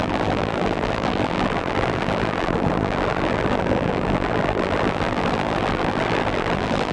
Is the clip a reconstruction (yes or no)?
yes